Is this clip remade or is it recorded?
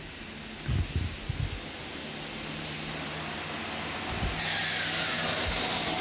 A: recorded